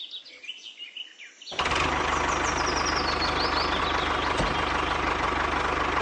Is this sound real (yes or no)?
yes